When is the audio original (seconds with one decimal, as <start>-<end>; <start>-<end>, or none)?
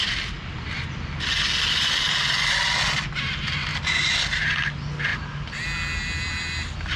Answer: 0.0-7.0